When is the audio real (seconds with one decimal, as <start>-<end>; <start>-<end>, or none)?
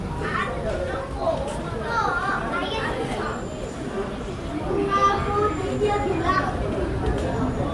0.0-7.7